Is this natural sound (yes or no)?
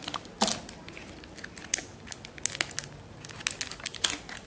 yes